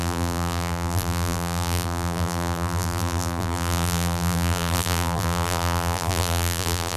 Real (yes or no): no